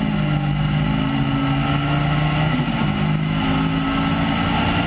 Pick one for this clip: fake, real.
real